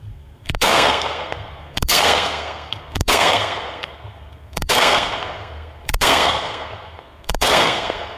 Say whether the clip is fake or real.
fake